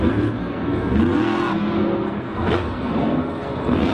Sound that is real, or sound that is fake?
fake